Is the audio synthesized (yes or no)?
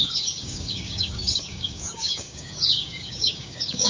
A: yes